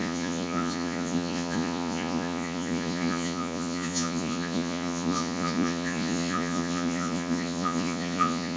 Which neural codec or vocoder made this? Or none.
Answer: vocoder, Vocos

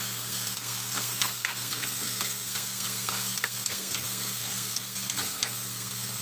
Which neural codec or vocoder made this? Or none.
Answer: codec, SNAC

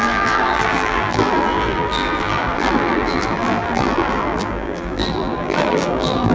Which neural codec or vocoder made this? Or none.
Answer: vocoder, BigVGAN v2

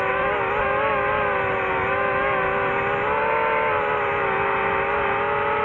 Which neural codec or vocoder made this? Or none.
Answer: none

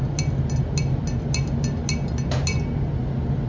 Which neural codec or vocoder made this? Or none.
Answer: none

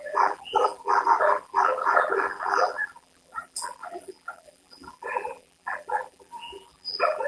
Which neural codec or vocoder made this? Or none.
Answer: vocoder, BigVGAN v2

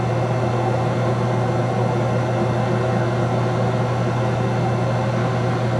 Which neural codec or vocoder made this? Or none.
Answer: none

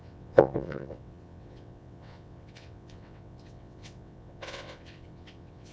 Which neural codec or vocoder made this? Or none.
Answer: vocoder, WaveNeXt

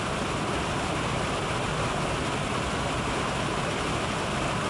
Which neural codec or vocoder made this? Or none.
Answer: none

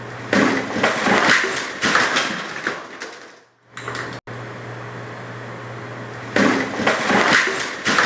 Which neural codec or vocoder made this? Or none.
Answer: none